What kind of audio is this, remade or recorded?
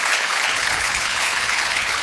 remade